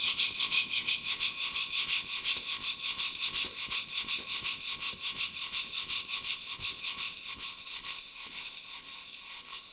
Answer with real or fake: fake